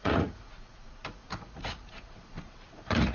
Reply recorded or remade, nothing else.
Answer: remade